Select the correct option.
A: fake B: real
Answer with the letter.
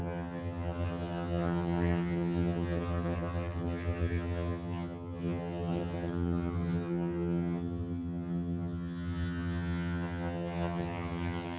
A